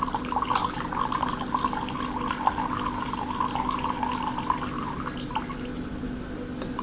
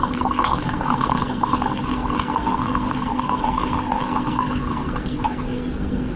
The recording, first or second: first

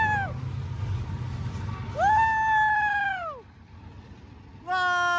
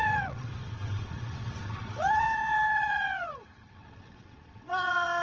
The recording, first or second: first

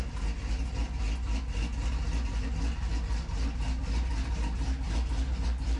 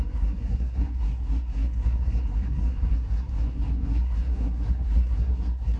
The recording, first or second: first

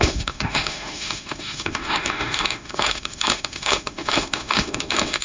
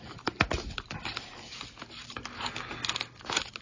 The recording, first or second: second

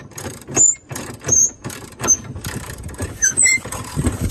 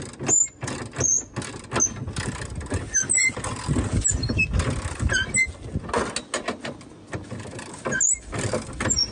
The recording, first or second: second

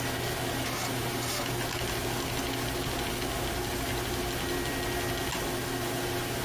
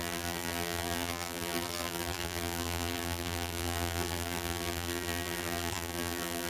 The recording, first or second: first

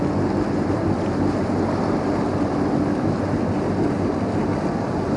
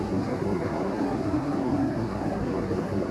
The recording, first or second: first